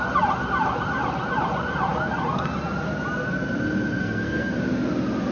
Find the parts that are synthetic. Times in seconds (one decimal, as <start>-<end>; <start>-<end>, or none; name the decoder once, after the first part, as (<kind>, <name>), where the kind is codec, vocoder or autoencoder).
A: 4.0-4.5 (codec, SNAC)

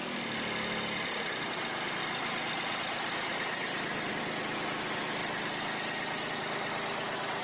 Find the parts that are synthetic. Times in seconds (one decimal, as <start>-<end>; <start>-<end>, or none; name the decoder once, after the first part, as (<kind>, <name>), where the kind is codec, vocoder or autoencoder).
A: none

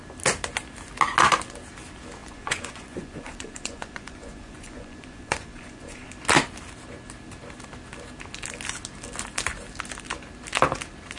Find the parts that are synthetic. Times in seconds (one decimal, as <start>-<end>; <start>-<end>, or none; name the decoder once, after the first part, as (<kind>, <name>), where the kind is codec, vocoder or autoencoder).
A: 2.2-6.1 (vocoder, Vocos)

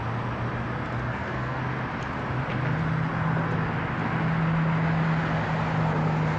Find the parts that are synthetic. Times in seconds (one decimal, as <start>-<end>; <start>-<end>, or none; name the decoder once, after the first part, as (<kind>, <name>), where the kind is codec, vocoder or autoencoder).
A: 1.1-1.6 (codec, SNAC)

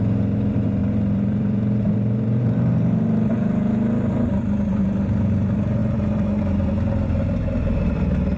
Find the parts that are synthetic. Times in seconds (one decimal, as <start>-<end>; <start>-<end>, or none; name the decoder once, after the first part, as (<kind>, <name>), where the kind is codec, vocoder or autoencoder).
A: 0.0-8.4 (vocoder, BigVGAN v2)